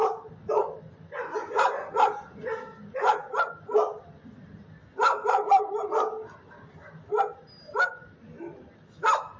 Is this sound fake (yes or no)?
no